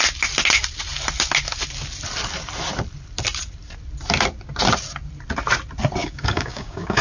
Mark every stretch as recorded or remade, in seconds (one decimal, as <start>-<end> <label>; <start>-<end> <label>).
0.0-6.0 recorded; 6.0-7.0 remade